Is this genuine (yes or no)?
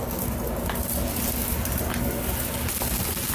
yes